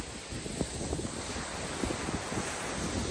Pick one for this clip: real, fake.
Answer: real